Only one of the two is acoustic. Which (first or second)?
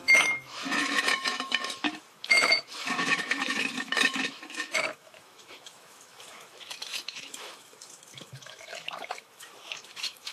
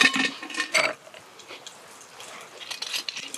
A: second